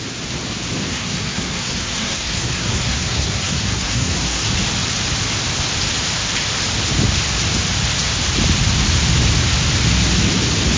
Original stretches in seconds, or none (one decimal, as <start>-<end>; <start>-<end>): 0.0-0.9; 4.5-10.8